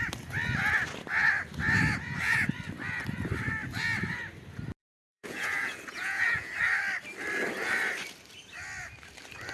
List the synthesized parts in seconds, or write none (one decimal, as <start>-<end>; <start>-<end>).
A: 4.8-6.5